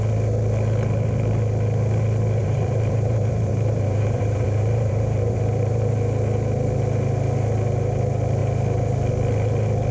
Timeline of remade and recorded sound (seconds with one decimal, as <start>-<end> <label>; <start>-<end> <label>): 0.0-2.4 recorded; 2.4-5.9 remade; 5.9-9.9 recorded